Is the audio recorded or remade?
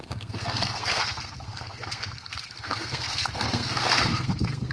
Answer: remade